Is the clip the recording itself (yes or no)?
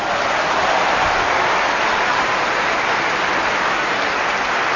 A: yes